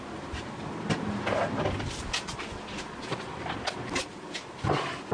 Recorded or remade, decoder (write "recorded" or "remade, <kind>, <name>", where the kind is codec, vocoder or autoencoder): recorded